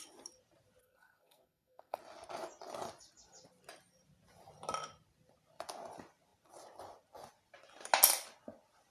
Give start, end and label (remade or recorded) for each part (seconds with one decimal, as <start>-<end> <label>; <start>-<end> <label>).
0.0-0.8 recorded; 0.8-2.0 remade; 2.0-8.9 recorded

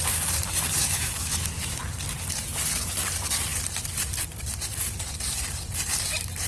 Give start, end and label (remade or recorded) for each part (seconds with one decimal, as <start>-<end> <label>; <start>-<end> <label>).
0.0-0.8 recorded; 0.8-1.8 remade; 1.8-6.5 recorded

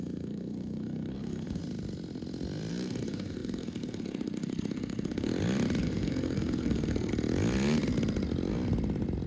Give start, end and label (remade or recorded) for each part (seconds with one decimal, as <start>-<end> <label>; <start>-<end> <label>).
0.0-1.6 remade; 1.6-2.7 recorded; 2.7-5.3 remade; 5.3-5.8 recorded; 5.8-7.1 remade; 7.1-9.3 recorded

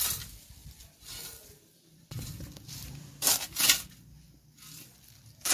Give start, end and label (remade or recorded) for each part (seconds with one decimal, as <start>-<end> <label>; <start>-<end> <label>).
0.0-0.6 recorded; 0.6-3.1 remade; 3.1-5.5 recorded

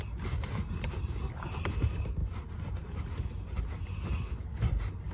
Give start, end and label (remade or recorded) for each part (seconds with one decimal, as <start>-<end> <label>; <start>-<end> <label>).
0.0-5.1 recorded

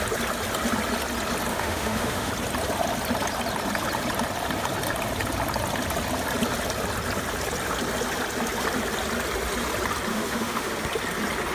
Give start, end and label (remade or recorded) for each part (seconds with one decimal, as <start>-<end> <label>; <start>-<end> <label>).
0.0-1.5 recorded; 1.5-2.3 remade; 2.3-10.1 recorded; 10.1-10.7 remade; 10.7-11.5 recorded

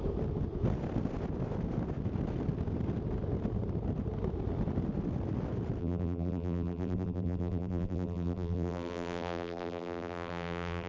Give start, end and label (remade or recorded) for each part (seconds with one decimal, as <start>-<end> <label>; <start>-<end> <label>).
0.0-5.8 recorded; 5.8-10.9 remade